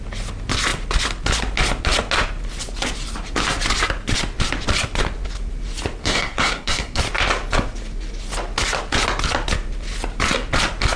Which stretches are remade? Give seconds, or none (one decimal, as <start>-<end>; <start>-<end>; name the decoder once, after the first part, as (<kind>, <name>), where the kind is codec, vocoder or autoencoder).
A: 6.0-7.0 (codec, SNAC)